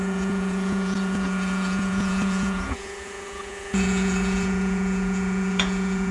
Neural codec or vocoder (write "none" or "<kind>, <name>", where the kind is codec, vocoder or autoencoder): vocoder, Vocos